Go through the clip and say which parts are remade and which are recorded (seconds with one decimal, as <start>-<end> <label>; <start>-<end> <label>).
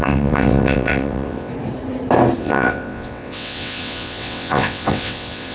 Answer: 0.0-1.5 remade; 1.5-2.4 recorded; 2.4-5.5 remade